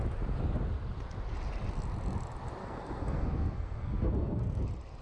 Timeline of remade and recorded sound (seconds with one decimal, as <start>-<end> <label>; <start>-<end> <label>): 0.0-2.6 recorded; 2.6-4.6 remade; 4.6-5.0 recorded